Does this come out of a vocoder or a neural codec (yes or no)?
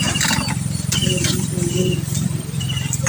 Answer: yes